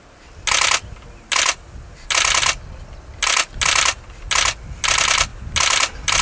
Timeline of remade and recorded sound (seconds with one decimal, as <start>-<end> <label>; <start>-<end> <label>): 0.0-6.2 recorded